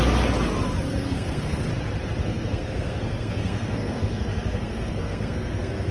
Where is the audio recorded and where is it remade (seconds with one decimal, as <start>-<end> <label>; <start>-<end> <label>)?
0.0-0.9 recorded; 0.9-1.6 remade; 1.6-2.2 recorded; 2.2-5.9 remade